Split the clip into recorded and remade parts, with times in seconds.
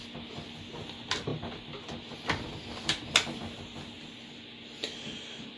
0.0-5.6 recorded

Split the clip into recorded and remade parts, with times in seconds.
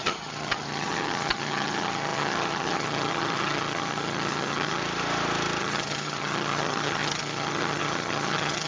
0.0-4.8 remade; 4.8-5.6 recorded; 5.6-8.7 remade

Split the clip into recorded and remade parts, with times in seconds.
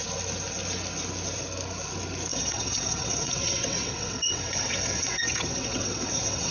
0.0-2.3 recorded; 2.3-6.5 remade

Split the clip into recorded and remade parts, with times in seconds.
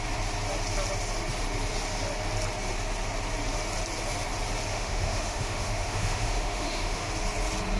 0.0-4.7 recorded; 4.7-7.1 remade; 7.1-7.8 recorded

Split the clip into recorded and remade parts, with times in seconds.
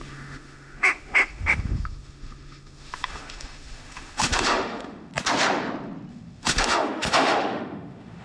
0.0-5.1 remade; 5.1-6.1 recorded; 6.1-8.2 remade